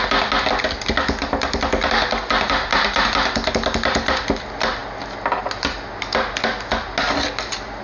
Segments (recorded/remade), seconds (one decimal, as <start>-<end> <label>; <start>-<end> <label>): 0.0-7.8 recorded